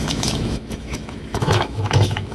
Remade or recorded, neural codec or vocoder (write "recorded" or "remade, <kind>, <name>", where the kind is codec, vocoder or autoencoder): remade, autoencoder, DAC-VAE